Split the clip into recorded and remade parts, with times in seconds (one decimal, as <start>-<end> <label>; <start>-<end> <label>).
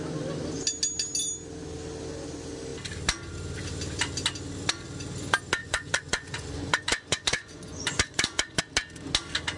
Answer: 0.0-5.6 recorded; 5.6-8.6 remade; 8.6-9.6 recorded